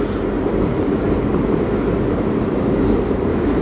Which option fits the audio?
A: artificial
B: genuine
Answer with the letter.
A